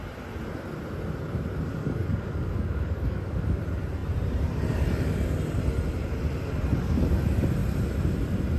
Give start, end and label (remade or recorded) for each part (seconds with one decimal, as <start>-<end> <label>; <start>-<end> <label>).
0.0-1.8 recorded; 1.8-3.6 remade; 3.6-8.6 recorded